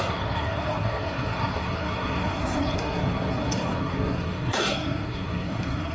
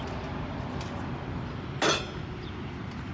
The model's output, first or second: first